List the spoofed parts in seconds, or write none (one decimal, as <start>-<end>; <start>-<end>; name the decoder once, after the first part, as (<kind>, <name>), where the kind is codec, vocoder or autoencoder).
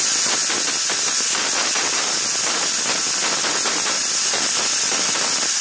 none